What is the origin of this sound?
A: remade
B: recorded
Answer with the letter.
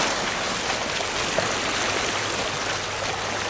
B